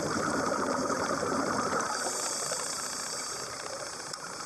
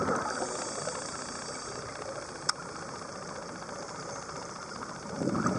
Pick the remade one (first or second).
first